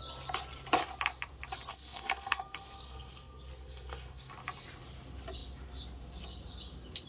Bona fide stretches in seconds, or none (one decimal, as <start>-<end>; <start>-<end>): 0.0-1.7; 4.3-7.1

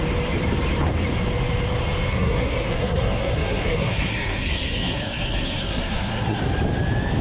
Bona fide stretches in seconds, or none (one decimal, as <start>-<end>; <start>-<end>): 0.0-2.1; 6.4-7.2

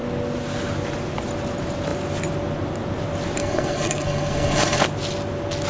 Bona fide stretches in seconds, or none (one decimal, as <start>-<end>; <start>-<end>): 0.0-3.4; 4.8-5.7

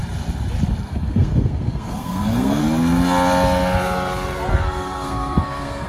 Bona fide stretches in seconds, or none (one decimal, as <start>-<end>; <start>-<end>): 0.0-0.9; 2.6-4.5

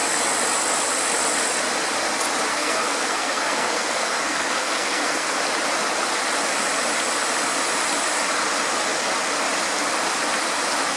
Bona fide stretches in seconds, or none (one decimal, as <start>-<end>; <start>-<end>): 0.0-2.5; 5.4-11.0

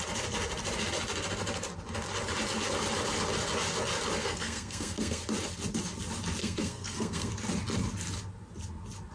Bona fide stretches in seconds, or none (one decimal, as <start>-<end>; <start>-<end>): 0.0-4.2; 5.2-6.4; 7.3-9.1

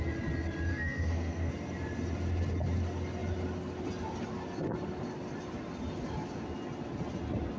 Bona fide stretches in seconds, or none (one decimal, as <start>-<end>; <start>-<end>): 0.0-0.7; 1.5-7.6